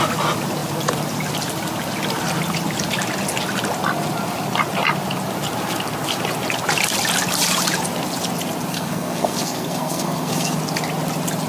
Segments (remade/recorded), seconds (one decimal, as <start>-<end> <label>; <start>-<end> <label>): 0.0-8.7 recorded; 8.7-10.6 remade; 10.6-11.5 recorded